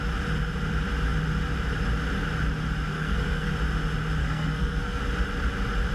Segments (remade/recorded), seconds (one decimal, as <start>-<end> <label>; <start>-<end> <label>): 0.0-2.9 recorded; 2.9-3.5 remade; 3.5-4.2 recorded; 4.2-5.0 remade; 5.0-5.9 recorded